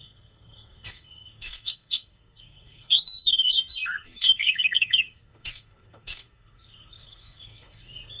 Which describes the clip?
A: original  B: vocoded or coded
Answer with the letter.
B